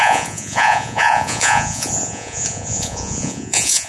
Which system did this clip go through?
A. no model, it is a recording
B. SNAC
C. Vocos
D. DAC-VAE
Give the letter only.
C